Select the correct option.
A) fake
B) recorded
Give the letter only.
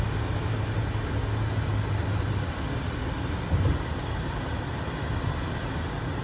B